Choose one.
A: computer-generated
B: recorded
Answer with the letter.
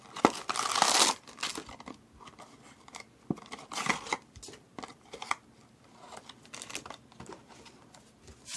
B